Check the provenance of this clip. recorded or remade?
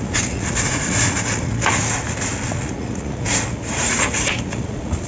remade